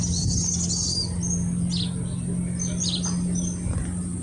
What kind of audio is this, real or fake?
real